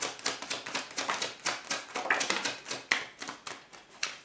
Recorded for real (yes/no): yes